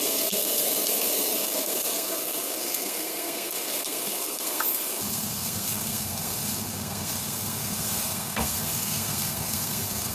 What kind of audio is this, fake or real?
fake